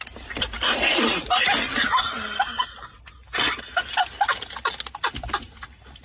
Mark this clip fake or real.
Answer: real